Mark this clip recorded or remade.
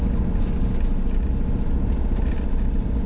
recorded